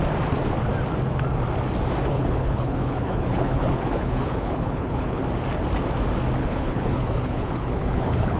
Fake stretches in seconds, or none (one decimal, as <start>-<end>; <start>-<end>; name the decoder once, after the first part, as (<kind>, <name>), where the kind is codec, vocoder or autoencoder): 2.1-5.2 (codec, HILCodec); 6.4-8.4